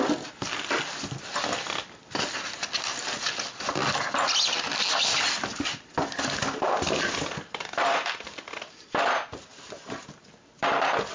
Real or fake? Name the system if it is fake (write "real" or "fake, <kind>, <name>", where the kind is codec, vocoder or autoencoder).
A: real